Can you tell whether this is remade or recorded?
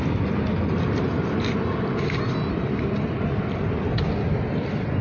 recorded